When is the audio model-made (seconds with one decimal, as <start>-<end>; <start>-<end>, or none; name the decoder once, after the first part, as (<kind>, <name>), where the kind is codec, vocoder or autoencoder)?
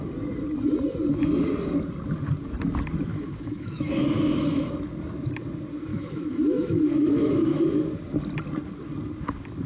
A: 3.1-4.7 (autoencoder, DAC-VAE); 5.9-7.9